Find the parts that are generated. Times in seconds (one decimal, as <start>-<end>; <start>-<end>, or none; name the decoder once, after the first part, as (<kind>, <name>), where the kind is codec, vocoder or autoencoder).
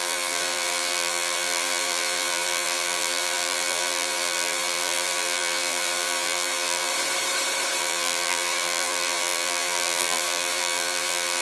0.0-6.9 (vocoder, BigVGAN v2); 7.8-11.4